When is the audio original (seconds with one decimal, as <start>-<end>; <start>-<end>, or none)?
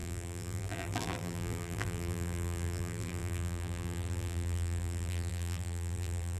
none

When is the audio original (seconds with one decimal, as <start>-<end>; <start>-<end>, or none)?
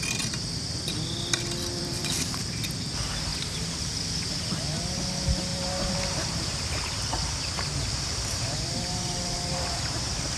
0.0-1.7; 2.4-5.5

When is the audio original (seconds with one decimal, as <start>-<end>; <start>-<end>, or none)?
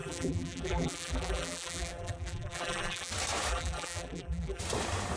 3.1-3.5; 4.6-5.2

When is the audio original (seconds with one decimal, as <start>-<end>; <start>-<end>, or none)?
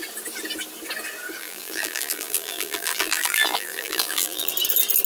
0.0-1.4; 4.5-5.1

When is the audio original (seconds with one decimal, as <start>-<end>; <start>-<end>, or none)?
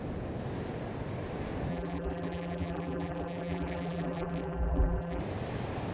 0.0-1.7; 5.2-5.9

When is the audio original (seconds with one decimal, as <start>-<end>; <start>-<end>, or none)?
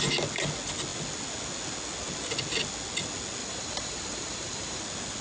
0.0-3.4; 4.8-5.2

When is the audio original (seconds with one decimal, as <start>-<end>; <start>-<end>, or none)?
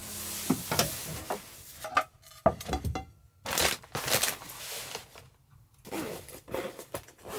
0.0-7.4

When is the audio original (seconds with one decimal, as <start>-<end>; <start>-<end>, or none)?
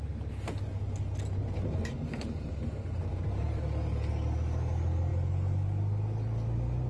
0.0-0.7; 2.6-3.1; 3.6-6.9